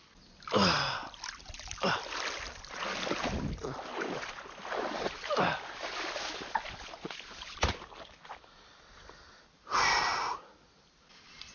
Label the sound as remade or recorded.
recorded